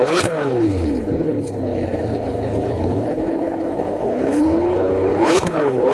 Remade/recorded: remade